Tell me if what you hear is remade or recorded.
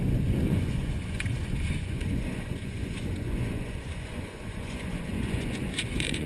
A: remade